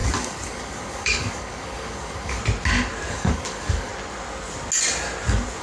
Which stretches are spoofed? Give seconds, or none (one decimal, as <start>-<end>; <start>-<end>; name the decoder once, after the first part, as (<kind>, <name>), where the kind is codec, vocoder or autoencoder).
0.0-2.4 (codec, DAC); 3.1-3.9